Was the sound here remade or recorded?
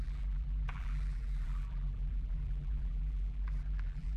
remade